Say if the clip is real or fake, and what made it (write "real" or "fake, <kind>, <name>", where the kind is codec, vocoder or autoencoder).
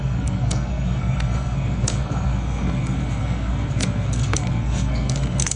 fake, codec, SNAC